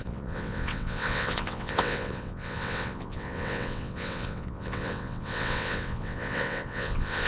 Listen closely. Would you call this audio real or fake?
fake